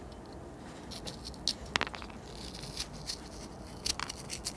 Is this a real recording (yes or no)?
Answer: yes